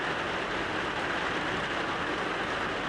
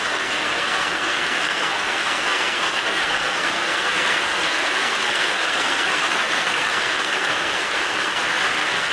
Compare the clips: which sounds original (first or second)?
first